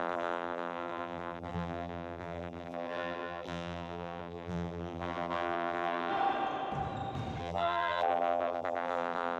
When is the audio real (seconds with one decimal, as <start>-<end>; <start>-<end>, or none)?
6.1-7.4